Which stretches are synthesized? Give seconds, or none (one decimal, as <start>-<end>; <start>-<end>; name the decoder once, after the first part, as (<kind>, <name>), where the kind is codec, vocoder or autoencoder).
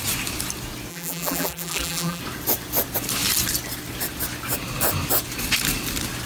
0.9-2.2 (vocoder, BigVGAN v2)